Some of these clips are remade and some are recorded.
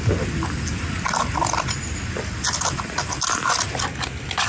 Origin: recorded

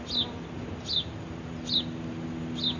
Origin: recorded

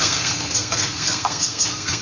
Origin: remade